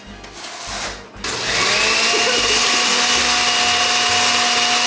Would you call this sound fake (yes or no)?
no